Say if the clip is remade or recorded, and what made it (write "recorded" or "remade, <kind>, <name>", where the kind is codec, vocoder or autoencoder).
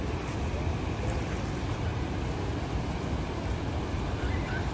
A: recorded